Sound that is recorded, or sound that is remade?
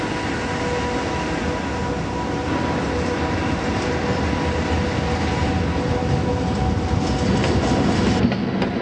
recorded